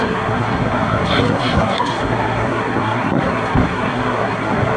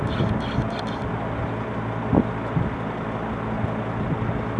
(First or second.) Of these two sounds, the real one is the second